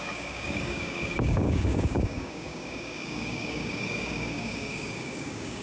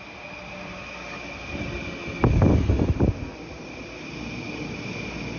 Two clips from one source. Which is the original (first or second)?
second